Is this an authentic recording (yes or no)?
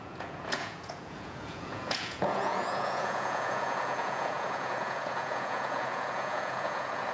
no